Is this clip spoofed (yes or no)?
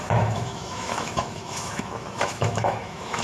yes